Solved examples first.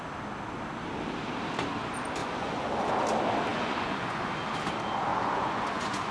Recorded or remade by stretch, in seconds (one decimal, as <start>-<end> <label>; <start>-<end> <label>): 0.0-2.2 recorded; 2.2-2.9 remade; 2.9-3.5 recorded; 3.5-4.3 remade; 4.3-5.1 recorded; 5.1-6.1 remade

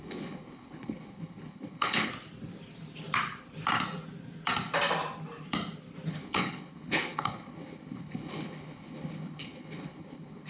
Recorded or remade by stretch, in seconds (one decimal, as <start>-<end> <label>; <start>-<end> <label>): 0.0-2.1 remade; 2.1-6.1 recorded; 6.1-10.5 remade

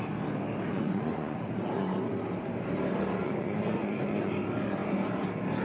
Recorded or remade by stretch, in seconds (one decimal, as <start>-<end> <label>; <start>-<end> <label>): 0.0-0.7 recorded; 0.7-2.1 remade; 2.1-3.2 recorded; 3.2-4.3 remade; 4.3-5.6 recorded

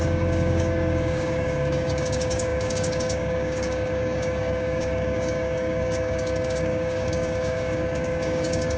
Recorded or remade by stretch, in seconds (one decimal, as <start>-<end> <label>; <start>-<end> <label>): 0.0-8.8 remade

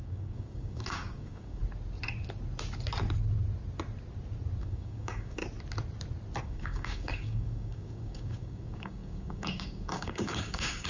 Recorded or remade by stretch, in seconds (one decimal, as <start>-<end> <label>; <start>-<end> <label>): 0.0-1.6 remade; 1.6-4.6 recorded; 4.6-5.4 remade; 5.4-6.4 recorded; 6.4-10.9 remade

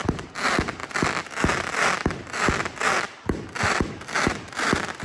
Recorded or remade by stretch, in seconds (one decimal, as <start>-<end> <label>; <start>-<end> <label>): 0.0-5.0 recorded

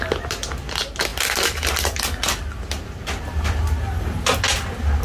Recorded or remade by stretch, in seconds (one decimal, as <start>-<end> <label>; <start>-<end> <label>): 0.0-5.0 recorded